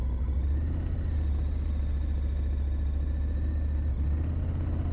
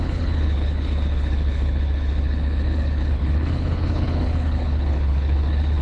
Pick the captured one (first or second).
first